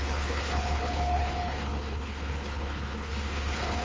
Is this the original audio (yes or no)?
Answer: no